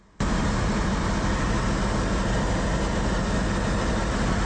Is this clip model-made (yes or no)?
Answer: no